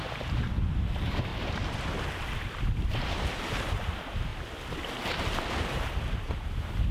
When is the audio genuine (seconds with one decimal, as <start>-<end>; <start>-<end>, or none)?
1.3-2.1; 4.3-6.2